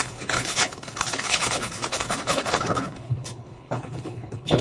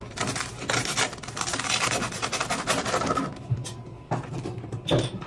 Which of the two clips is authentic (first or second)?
second